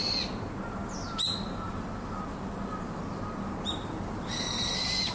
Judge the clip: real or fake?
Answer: real